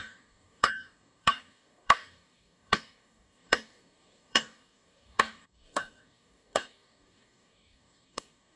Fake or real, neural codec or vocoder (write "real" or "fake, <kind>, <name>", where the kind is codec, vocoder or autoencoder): fake, codec, DAC